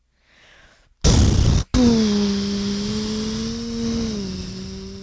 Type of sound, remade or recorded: recorded